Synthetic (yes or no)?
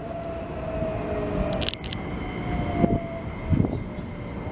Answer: no